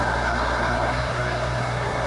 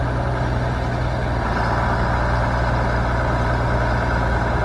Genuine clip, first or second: second